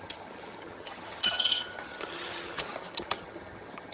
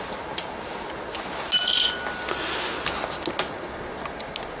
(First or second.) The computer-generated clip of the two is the first